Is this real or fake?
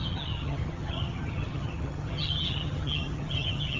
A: fake